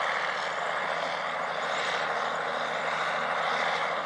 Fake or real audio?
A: real